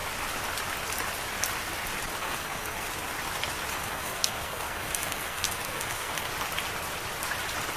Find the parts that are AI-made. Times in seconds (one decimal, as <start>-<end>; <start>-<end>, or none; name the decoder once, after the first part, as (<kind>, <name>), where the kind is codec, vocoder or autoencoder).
2.2-2.9 (codec, SNAC); 3.7-6.3

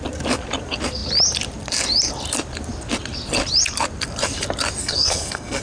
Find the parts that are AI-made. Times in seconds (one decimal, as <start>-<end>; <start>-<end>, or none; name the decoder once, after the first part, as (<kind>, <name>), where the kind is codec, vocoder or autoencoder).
4.8-5.6 (codec, SNAC)

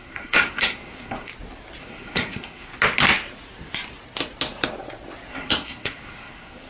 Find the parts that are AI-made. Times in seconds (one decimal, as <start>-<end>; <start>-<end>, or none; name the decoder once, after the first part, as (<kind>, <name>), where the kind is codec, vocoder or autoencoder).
0.0-1.3 (codec, SNAC); 1.8-2.7; 5.3-6.7

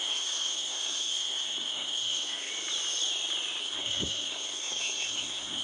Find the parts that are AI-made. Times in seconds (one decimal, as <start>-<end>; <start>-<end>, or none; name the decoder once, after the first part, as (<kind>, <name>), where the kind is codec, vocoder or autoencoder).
0.0-2.5 (codec, SNAC); 3.6-5.6